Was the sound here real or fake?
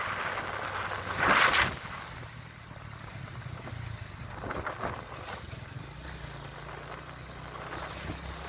real